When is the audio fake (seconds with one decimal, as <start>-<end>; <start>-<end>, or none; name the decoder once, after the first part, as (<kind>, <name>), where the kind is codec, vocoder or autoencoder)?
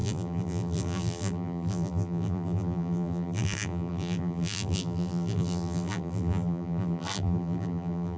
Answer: 0.0-8.2 (vocoder, BigVGAN v2)